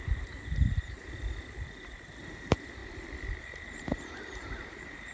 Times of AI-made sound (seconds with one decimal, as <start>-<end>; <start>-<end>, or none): 0.0-1.2; 2.2-2.8; 3.4-5.1